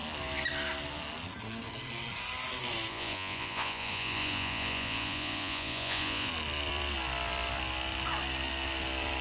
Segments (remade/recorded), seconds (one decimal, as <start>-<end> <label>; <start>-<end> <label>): 0.0-2.9 recorded; 2.9-6.3 remade; 6.3-9.2 recorded

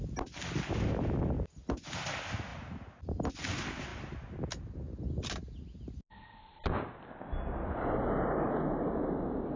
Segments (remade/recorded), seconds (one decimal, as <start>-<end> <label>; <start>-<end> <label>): 0.0-9.6 recorded

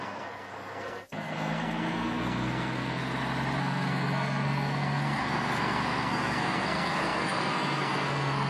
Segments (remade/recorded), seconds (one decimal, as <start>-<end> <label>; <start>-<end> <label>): 0.0-3.0 remade; 3.0-3.6 recorded; 3.6-8.5 remade

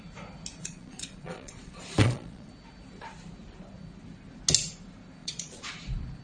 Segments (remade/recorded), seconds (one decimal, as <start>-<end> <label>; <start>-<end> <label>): 0.0-0.6 recorded; 0.6-2.5 remade; 2.5-5.2 recorded; 5.2-5.7 remade; 5.7-6.2 recorded

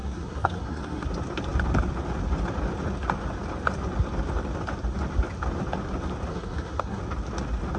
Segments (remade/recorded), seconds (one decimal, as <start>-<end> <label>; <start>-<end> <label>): 0.0-1.1 remade; 1.1-6.3 recorded; 6.3-7.0 remade; 7.0-7.8 recorded

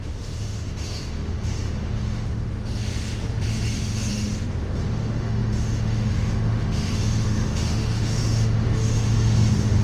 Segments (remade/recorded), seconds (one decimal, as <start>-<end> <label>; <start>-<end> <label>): 0.0-9.8 remade

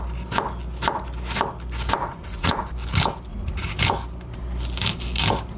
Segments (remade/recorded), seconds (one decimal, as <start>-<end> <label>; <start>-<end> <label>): 0.0-2.0 recorded; 2.0-2.6 remade; 2.6-3.3 recorded; 3.3-3.8 remade; 3.8-5.6 recorded